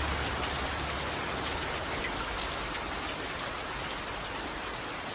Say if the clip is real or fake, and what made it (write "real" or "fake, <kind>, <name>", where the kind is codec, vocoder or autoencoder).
real